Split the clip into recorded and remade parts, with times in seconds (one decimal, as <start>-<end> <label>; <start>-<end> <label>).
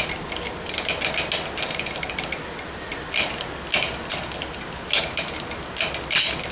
0.0-6.5 recorded